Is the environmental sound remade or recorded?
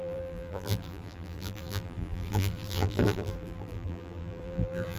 remade